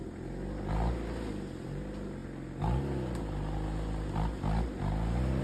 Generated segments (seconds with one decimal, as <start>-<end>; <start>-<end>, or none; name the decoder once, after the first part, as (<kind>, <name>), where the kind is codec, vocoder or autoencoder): none